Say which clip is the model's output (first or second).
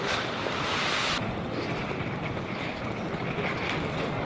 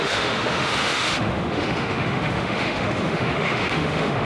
second